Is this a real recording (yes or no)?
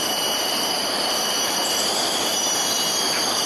no